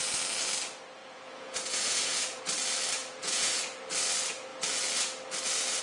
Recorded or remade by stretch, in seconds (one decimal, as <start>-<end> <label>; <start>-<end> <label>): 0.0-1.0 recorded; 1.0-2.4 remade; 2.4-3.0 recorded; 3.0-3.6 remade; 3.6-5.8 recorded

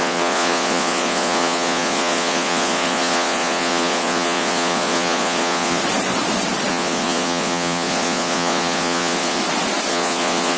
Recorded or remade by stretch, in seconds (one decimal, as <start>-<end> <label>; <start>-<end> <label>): 0.0-5.8 remade; 5.8-6.7 recorded; 6.7-9.4 remade; 9.4-9.9 recorded; 9.9-10.6 remade

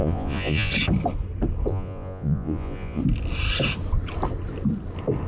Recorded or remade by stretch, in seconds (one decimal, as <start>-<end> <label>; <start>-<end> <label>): 0.0-0.7 remade; 0.7-1.7 recorded; 1.7-3.0 remade; 3.0-5.3 recorded

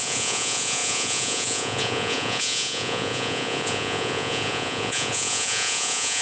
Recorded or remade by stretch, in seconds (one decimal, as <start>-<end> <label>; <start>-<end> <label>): 0.0-6.2 remade

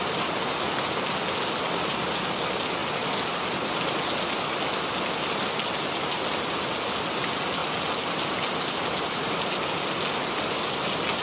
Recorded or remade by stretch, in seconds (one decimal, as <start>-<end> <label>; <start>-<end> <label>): 0.0-11.2 recorded